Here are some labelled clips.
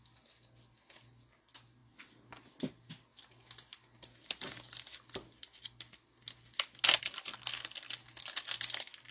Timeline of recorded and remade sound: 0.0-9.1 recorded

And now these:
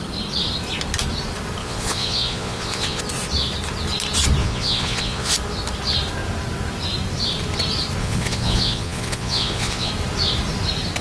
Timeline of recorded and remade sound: 0.0-1.6 recorded; 1.6-3.0 remade; 3.0-4.4 recorded; 4.4-5.3 remade; 5.3-8.0 recorded; 8.0-9.9 remade; 9.9-11.0 recorded

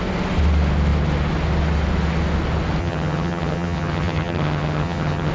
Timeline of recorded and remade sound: 0.0-2.8 recorded; 2.8-5.3 remade

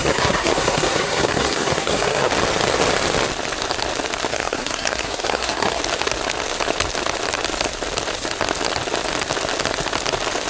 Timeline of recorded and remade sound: 0.0-2.3 remade; 2.3-4.3 recorded; 4.3-5.8 remade; 5.8-10.5 recorded

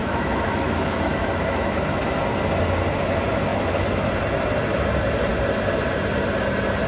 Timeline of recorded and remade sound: 0.0-2.0 remade; 2.0-3.5 recorded; 3.5-4.1 remade; 4.1-6.9 recorded

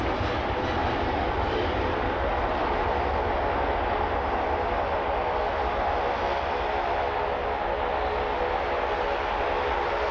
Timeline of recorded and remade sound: 0.0-10.1 recorded

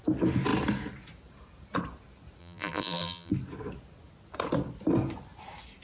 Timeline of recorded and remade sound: 0.0-2.4 recorded; 2.4-3.3 remade; 3.3-5.8 recorded